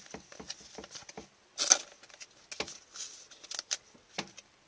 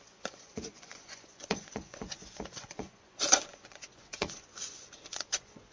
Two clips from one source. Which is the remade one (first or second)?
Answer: second